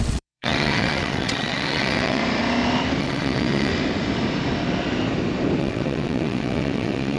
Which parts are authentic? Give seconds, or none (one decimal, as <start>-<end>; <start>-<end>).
2.2-3.0; 3.7-5.6